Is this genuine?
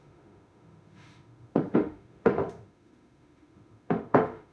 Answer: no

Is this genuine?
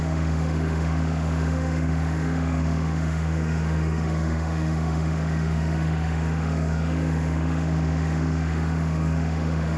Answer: no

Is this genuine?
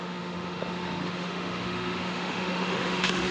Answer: no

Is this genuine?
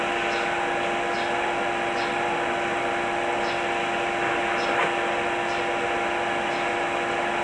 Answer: yes